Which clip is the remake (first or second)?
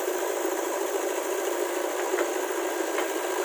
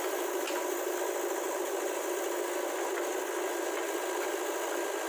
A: first